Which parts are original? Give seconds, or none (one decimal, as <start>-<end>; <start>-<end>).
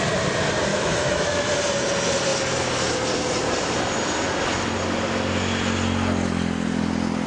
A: 0.0-0.7; 1.5-7.3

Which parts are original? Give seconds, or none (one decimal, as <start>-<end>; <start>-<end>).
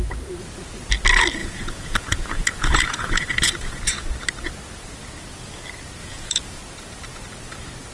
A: 0.0-1.4; 3.8-6.0; 6.6-7.9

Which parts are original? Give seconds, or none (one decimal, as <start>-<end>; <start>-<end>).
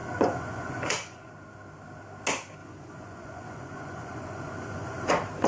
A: 1.3-2.6; 5.1-5.5